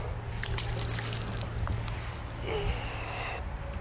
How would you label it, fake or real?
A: real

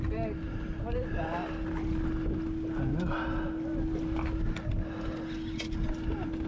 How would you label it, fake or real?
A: real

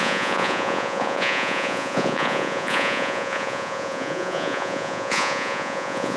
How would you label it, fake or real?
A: fake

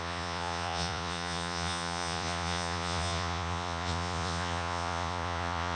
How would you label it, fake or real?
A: fake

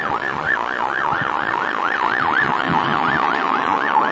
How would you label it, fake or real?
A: fake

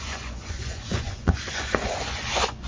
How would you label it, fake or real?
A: fake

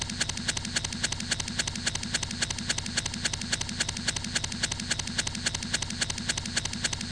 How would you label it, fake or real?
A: real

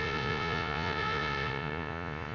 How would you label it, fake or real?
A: fake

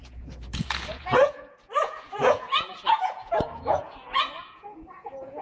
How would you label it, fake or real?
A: fake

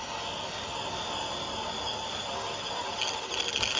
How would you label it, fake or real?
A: real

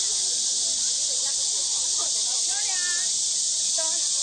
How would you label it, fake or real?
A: real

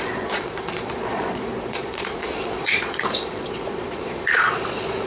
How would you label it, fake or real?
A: fake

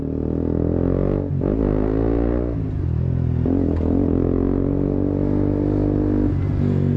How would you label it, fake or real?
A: real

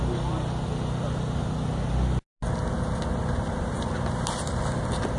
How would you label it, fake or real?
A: real